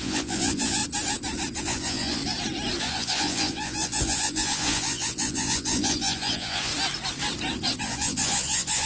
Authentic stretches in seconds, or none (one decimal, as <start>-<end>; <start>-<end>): 0.8-1.6; 2.2-2.8; 6.7-7.8